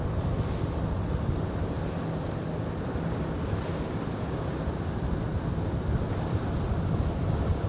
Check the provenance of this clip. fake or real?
real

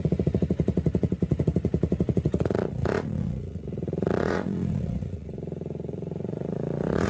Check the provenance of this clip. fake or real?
fake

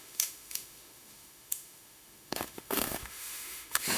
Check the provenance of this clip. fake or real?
fake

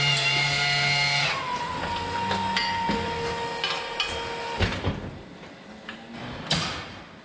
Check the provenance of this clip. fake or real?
real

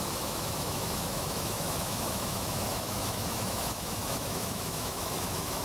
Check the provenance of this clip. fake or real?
fake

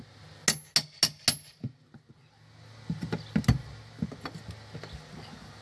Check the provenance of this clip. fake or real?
real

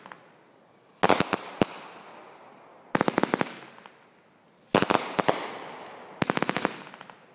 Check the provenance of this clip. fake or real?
real